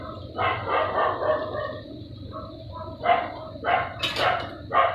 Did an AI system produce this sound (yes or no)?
no